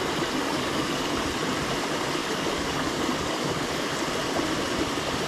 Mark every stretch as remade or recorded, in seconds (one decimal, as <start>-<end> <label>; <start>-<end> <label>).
0.0-0.4 recorded; 0.4-1.1 remade; 1.1-2.2 recorded; 2.2-3.8 remade; 3.8-5.3 recorded

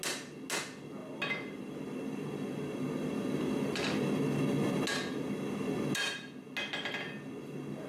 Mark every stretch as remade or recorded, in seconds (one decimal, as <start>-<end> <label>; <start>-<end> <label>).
0.0-7.9 recorded

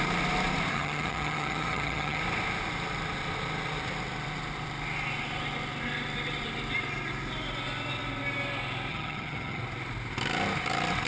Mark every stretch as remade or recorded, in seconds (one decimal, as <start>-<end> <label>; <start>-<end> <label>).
0.0-0.7 recorded; 0.7-2.2 remade; 2.2-8.9 recorded; 8.9-9.6 remade; 9.6-11.1 recorded